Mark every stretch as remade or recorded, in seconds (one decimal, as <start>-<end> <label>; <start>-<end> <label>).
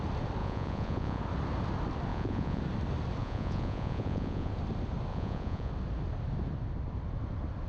0.0-0.4 recorded; 0.4-1.2 remade; 1.2-2.1 recorded; 2.1-2.6 remade; 2.6-3.2 recorded; 3.2-4.5 remade; 4.5-5.1 recorded; 5.1-5.7 remade; 5.7-7.7 recorded